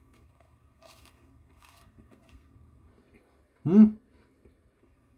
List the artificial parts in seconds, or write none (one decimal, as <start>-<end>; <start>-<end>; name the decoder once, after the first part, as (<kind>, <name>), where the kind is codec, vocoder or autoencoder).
0.0-2.9 (codec, SNAC); 4.8-5.2